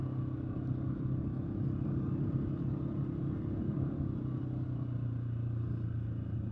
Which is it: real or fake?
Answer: real